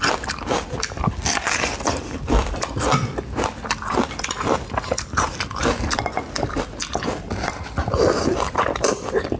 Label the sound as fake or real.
real